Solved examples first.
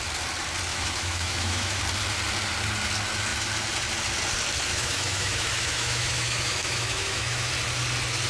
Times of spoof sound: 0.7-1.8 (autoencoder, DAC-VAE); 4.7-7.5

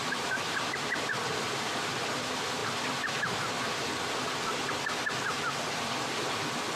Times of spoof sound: none

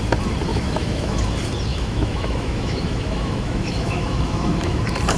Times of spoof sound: 0.5-1.2 (autoencoder, DAC-VAE); 1.7-4.8

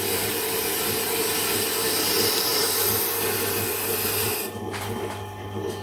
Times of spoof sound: none